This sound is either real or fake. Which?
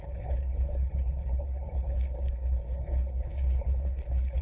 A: fake